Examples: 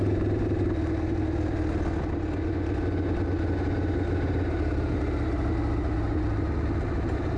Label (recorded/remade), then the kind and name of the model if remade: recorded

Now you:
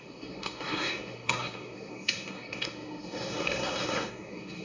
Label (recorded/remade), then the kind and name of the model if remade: remade, codec, SNAC